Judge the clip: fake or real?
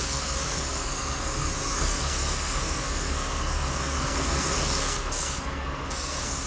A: fake